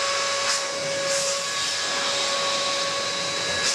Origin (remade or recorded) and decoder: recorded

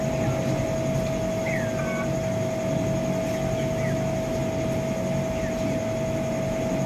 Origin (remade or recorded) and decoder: recorded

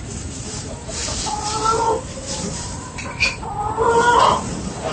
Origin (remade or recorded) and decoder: remade, vocoder, BigVGAN v2